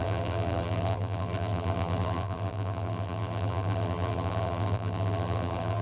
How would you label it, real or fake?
fake